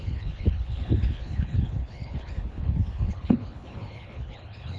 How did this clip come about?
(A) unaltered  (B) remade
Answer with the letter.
B